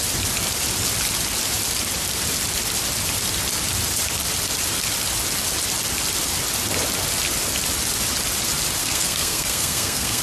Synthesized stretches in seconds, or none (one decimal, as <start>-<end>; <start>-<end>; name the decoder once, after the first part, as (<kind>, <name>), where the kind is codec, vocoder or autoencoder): 8.8-10.2 (codec, SNAC)